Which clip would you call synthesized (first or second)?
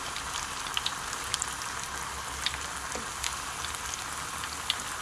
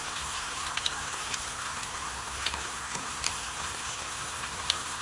second